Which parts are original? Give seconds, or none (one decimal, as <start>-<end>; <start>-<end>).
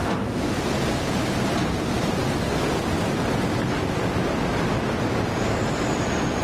0.0-0.9; 2.2-6.0